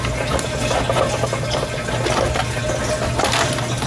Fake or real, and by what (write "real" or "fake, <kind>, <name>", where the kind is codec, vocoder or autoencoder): real